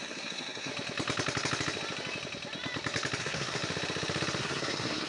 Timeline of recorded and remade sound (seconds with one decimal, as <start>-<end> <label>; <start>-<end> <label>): 0.0-0.7 remade; 0.7-3.2 recorded; 3.2-3.6 remade; 3.6-4.4 recorded; 4.4-5.1 remade